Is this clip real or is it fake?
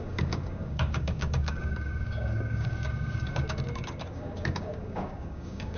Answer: fake